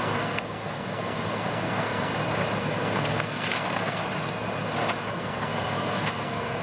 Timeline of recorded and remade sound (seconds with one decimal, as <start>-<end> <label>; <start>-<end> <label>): 0.0-2.1 remade; 2.1-2.6 recorded; 2.6-4.0 remade; 4.0-5.1 recorded; 5.1-6.6 remade

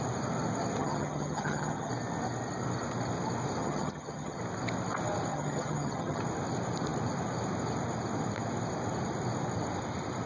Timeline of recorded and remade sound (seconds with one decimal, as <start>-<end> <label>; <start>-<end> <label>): 0.0-0.8 recorded; 0.8-1.9 remade; 1.9-3.6 recorded; 3.6-4.4 remade; 4.4-5.3 recorded; 5.3-6.2 remade; 6.2-10.3 recorded

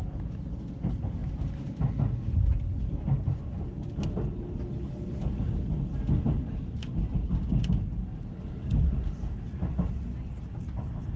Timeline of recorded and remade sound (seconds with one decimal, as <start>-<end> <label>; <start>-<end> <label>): 0.0-11.2 recorded

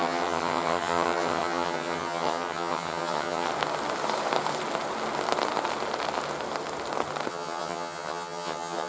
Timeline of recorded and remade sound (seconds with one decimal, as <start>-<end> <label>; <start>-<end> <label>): 0.0-3.5 remade; 3.5-7.3 recorded; 7.3-8.9 remade

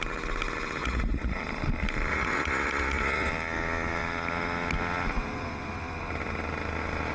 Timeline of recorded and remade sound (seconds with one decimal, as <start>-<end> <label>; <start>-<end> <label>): 0.0-0.8 recorded; 0.8-1.4 remade; 1.4-2.1 recorded; 2.1-3.3 remade; 3.3-7.1 recorded

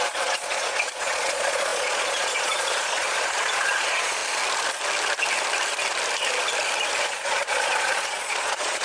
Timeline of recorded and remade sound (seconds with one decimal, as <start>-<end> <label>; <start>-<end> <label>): 0.0-4.2 remade; 4.2-7.0 recorded; 7.0-8.8 remade

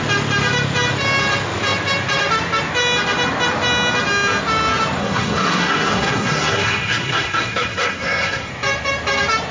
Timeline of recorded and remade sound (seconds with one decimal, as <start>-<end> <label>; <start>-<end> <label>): 0.0-5.0 recorded; 5.0-8.5 remade; 8.5-9.5 recorded

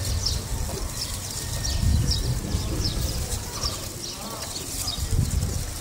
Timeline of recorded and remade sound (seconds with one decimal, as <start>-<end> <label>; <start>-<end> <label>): 0.0-0.5 recorded; 0.5-4.0 remade; 4.0-5.8 recorded